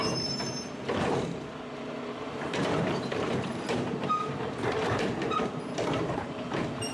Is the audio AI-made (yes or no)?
yes